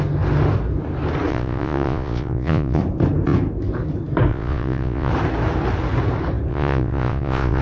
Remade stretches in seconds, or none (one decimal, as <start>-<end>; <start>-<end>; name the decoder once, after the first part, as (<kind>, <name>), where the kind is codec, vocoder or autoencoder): 1.3-2.8 (vocoder, Vocos); 4.3-5.1; 6.5-7.6